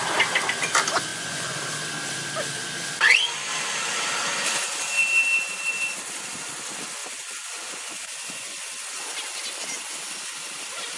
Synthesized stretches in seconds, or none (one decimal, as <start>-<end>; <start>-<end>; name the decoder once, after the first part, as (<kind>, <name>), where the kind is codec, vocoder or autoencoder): 1.1-1.6 (vocoder, Vocos); 7.0-9.0